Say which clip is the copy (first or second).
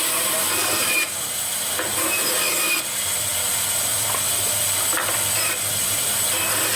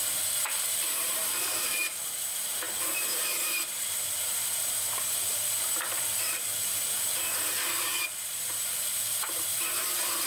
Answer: second